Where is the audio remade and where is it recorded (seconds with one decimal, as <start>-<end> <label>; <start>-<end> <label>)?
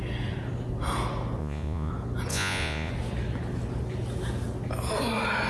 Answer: 0.0-1.4 recorded; 1.4-1.9 remade; 1.9-2.3 recorded; 2.3-2.9 remade; 2.9-5.5 recorded